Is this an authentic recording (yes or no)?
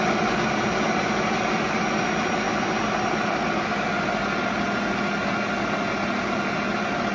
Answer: yes